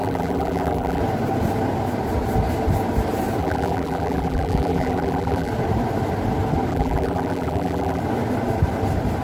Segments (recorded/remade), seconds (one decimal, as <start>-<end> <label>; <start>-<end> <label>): 0.0-1.0 remade; 1.0-3.4 recorded; 3.4-5.5 remade; 5.5-6.7 recorded; 6.7-8.0 remade; 8.0-9.2 recorded